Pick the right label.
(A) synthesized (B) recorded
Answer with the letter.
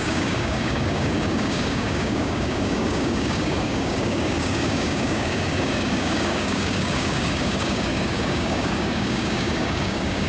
A